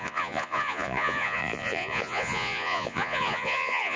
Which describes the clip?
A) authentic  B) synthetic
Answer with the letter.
B